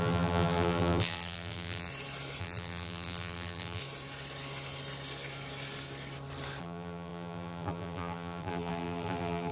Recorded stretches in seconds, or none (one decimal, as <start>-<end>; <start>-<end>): 1.9-2.4; 3.8-6.6